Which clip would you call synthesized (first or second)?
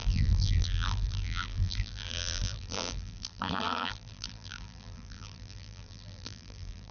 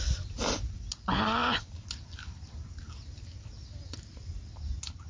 first